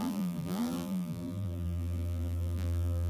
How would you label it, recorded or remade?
remade